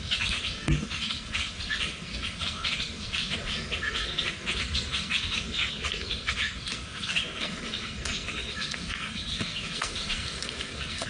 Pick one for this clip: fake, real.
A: fake